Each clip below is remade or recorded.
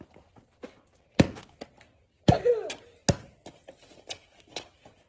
recorded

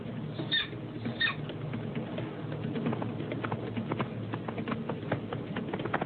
recorded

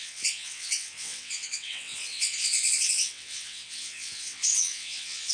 remade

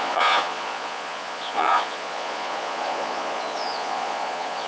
remade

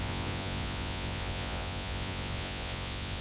remade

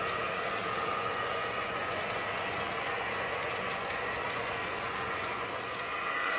remade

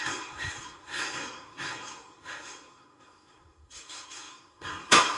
remade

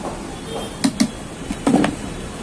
recorded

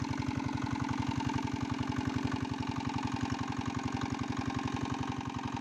recorded